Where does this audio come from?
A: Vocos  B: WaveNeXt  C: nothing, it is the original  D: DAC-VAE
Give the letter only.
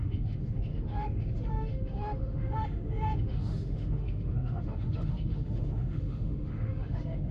D